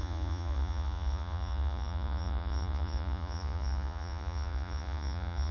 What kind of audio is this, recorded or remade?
remade